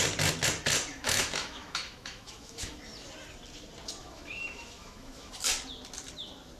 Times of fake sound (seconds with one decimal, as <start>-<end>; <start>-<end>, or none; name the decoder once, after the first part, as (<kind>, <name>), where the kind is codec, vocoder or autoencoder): 0.9-2.8 (autoencoder, DAC-VAE); 4.0-5.3